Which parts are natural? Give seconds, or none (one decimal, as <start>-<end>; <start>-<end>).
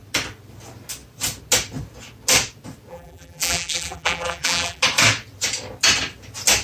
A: 0.0-2.9; 4.8-6.6